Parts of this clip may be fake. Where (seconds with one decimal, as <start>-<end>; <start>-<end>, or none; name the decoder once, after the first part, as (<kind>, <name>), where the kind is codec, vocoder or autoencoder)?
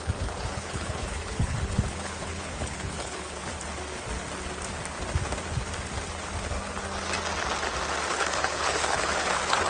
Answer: 0.0-3.4 (codec, HILCodec); 8.1-9.7